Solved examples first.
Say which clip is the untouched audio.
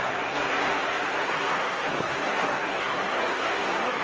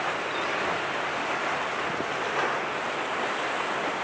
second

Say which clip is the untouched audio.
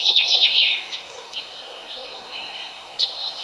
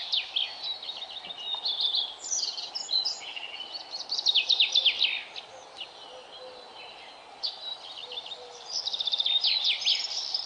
second